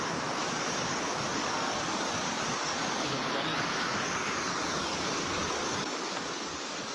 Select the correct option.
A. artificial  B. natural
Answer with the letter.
A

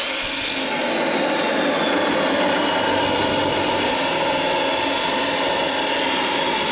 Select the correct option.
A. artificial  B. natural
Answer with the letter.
B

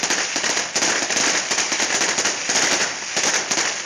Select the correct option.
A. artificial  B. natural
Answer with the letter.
B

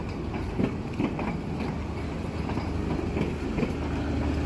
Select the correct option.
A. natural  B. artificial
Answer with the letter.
A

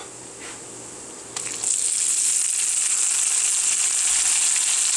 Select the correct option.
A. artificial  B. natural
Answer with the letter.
B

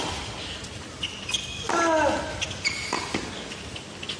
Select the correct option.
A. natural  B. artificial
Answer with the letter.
A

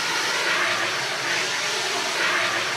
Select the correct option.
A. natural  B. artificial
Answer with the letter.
A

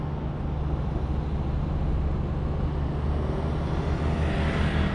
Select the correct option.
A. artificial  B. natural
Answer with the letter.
B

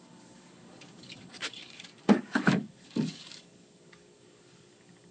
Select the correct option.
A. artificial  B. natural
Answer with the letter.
A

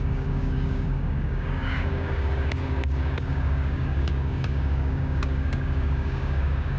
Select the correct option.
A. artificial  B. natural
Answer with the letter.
A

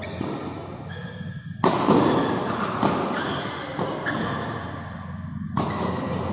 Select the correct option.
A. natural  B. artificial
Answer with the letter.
A